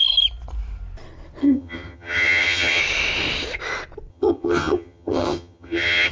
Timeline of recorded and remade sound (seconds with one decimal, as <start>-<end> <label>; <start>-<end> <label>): 0.0-1.4 recorded; 1.4-2.8 remade; 2.8-4.1 recorded; 4.1-6.1 remade